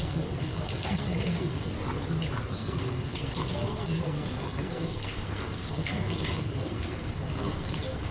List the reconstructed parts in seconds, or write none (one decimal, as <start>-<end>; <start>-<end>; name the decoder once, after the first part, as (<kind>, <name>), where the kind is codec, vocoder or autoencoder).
0.0-1.7 (codec, SNAC); 2.5-8.1